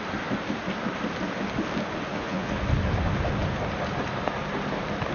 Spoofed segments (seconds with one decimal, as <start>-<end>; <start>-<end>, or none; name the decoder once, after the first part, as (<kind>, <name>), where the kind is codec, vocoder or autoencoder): 2.1-2.6 (vocoder, Vocos)